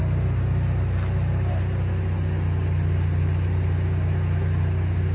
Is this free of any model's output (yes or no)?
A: yes